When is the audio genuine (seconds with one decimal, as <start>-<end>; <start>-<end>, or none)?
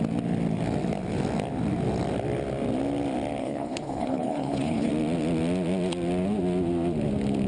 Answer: 0.0-3.4; 4.9-7.5